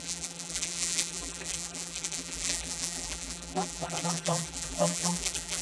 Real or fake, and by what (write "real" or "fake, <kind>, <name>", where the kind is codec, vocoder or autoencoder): fake, vocoder, BigVGAN v2